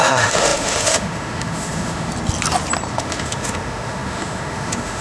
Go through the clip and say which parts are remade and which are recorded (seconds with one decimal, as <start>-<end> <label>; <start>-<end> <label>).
0.0-2.1 remade; 2.1-2.9 recorded; 2.9-5.0 remade